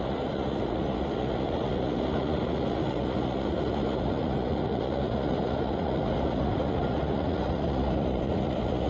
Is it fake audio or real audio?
fake